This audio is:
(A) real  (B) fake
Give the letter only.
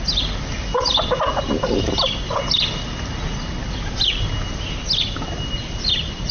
A